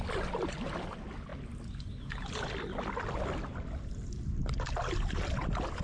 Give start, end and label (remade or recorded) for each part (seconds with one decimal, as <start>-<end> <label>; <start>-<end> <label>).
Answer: 0.0-5.8 recorded